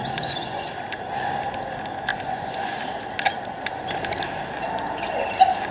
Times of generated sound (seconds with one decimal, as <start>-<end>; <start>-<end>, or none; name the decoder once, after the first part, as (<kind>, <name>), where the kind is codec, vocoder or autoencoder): 0.0-0.7 (vocoder, Vocos); 2.1-2.8